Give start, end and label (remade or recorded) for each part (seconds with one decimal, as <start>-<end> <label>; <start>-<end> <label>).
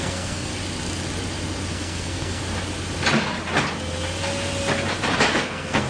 0.0-0.5 remade; 0.5-1.7 recorded; 1.7-2.4 remade; 2.4-5.3 recorded; 5.3-5.9 remade